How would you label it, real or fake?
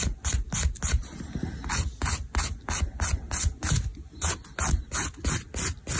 real